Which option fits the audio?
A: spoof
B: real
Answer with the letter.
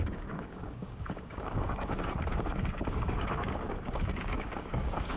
A